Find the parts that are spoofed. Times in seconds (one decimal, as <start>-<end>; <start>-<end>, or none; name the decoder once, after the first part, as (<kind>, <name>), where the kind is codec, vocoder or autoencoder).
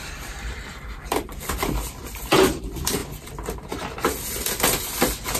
0.0-3.0 (vocoder, BigVGAN v2)